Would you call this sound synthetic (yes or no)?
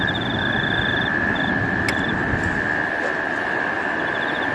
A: no